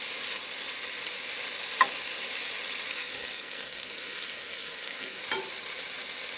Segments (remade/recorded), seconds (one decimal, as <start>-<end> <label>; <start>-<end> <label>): 0.0-2.9 recorded; 2.9-5.2 remade; 5.2-6.4 recorded